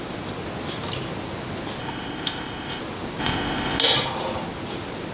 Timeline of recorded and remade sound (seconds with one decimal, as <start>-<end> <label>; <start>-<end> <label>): 0.0-1.8 recorded; 1.8-2.8 remade; 2.8-3.2 recorded; 3.2-3.8 remade; 3.8-5.1 recorded